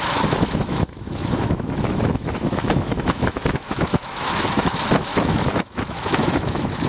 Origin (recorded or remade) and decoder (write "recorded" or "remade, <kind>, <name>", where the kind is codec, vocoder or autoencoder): remade, autoencoder, DAC-VAE